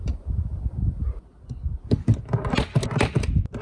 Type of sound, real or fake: real